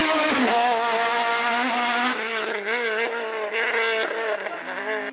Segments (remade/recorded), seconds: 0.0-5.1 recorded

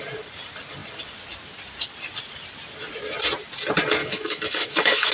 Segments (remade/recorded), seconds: 0.0-4.0 recorded; 4.0-5.1 remade

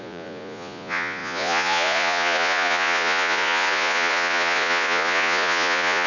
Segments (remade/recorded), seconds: 0.0-6.1 remade

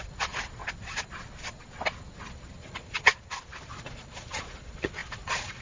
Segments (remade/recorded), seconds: 0.0-0.6 remade; 0.6-2.6 recorded; 2.6-3.1 remade; 3.1-3.6 recorded; 3.6-5.6 remade

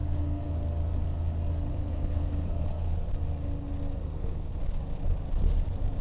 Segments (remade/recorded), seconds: 0.0-0.5 remade; 0.5-1.7 recorded; 1.7-3.1 remade; 3.1-4.0 recorded; 4.0-4.6 remade; 4.6-6.0 recorded

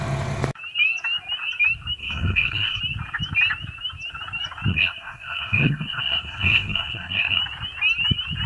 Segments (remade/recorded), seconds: 0.0-2.0 recorded; 2.0-2.8 remade; 2.8-4.7 recorded; 4.7-7.4 remade; 7.4-8.5 recorded

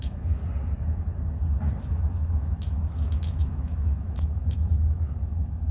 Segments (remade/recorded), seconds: 0.0-0.4 remade; 0.4-1.8 recorded; 1.8-5.7 remade